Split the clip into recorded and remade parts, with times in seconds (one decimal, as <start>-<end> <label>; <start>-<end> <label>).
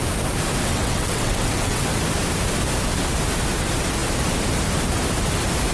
0.0-0.6 recorded; 0.6-1.9 remade; 1.9-5.7 recorded